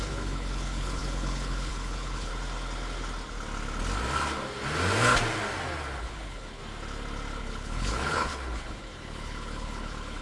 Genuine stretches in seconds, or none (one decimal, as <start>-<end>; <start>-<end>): 2.3-6.0; 6.6-7.4